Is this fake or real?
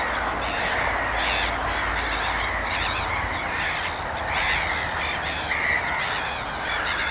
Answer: real